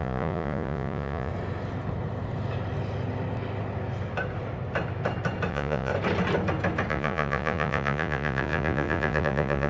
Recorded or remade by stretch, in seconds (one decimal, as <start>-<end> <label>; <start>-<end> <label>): 0.0-1.3 remade; 1.3-5.5 recorded; 5.5-5.9 remade; 5.9-6.9 recorded; 6.9-9.7 remade

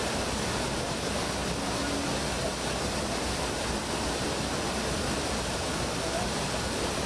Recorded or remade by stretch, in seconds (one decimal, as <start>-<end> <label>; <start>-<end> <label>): 0.0-7.1 recorded